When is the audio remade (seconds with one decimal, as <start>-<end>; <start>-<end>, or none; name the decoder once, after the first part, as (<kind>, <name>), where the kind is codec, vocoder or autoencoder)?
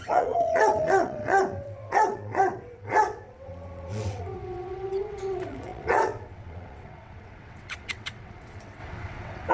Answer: 0.0-9.5 (vocoder, WaveNeXt)